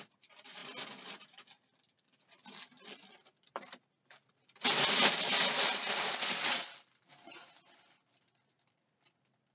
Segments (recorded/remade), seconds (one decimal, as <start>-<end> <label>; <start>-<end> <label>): 0.0-9.5 recorded